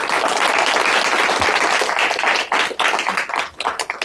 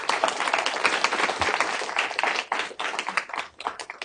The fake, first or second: second